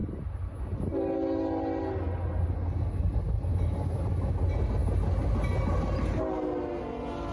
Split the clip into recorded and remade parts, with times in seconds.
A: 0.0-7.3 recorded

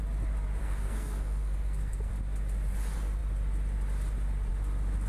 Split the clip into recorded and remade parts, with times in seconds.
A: 0.0-0.6 recorded; 0.6-2.1 remade; 2.1-5.1 recorded

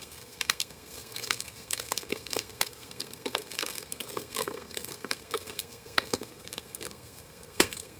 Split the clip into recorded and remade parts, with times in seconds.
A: 0.0-8.0 remade